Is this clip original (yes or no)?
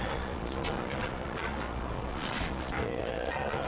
no